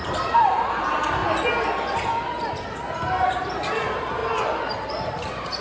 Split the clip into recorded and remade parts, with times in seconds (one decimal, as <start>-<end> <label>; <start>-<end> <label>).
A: 0.0-1.2 remade; 1.2-3.3 recorded; 3.3-4.2 remade; 4.2-4.9 recorded; 4.9-5.6 remade